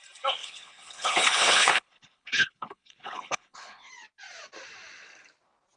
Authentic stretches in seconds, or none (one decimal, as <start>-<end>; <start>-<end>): 0.0-0.4; 3.9-5.8